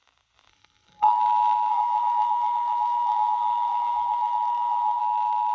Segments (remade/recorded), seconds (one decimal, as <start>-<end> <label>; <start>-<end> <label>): 0.0-0.5 recorded; 0.5-1.2 remade; 1.2-1.7 recorded; 1.7-5.0 remade; 5.0-5.5 recorded